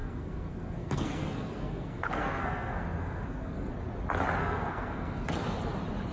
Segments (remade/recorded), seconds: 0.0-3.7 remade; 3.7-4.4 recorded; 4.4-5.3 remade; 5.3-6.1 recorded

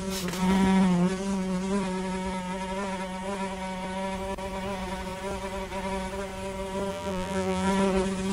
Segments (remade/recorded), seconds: 0.0-6.9 recorded; 6.9-7.7 remade; 7.7-8.3 recorded

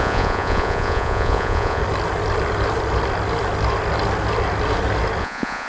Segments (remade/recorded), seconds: 0.0-1.8 remade; 1.8-5.2 recorded; 5.2-5.7 remade

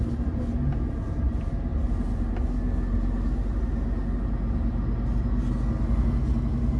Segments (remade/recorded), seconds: 0.0-6.8 recorded

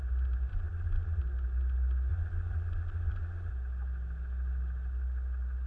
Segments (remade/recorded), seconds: 0.0-0.5 recorded; 0.5-1.2 remade; 1.2-2.1 recorded; 2.1-3.5 remade; 3.5-5.7 recorded

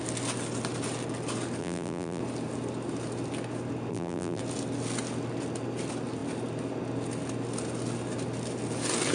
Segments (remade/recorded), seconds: 0.0-1.6 recorded; 1.6-2.2 remade; 2.2-3.9 recorded; 3.9-4.4 remade; 4.4-9.1 recorded

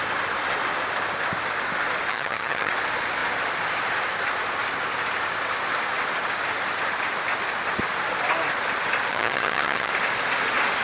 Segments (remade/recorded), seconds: 0.0-2.1 recorded; 2.1-2.7 remade; 2.7-9.1 recorded; 9.1-9.9 remade; 9.9-10.8 recorded

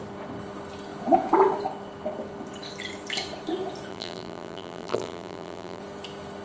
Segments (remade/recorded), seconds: 0.0-3.9 recorded; 3.9-5.8 remade; 5.8-6.4 recorded